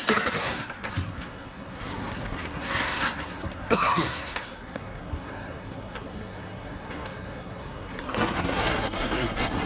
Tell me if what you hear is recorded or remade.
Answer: remade